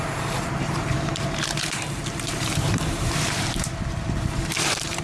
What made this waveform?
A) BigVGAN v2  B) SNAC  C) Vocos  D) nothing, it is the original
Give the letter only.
A